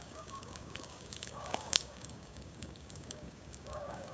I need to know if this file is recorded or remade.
remade